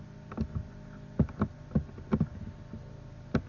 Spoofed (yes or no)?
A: no